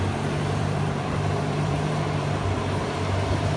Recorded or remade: remade